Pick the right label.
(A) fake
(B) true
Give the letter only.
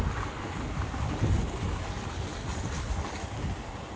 B